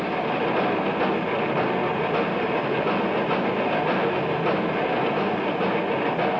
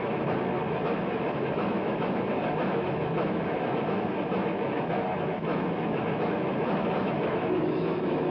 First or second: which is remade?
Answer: second